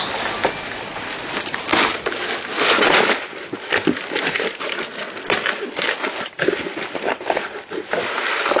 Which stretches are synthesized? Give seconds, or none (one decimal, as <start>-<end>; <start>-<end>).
none